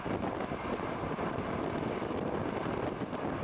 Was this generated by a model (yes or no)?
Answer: no